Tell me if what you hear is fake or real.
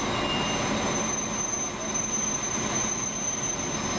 real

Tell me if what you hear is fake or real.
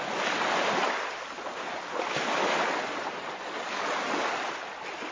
real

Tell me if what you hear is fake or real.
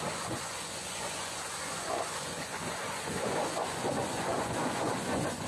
fake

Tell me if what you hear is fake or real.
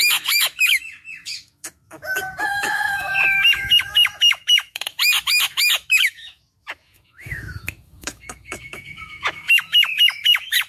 fake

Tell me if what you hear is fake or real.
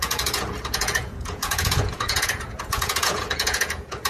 fake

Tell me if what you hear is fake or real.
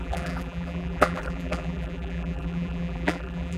fake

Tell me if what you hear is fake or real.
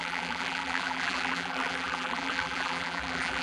fake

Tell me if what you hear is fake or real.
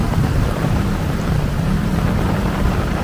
fake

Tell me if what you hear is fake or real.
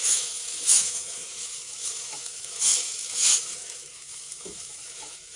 fake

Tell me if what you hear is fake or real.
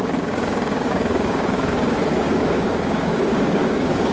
fake